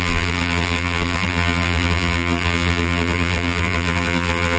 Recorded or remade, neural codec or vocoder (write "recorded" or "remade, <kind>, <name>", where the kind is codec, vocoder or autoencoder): remade, vocoder, BigVGAN v2